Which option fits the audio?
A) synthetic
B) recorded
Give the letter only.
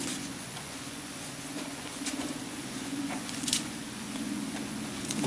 A